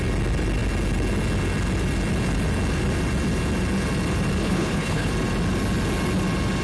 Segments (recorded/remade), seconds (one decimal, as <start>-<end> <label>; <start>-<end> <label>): 0.0-4.4 recorded; 4.4-5.1 remade; 5.1-6.6 recorded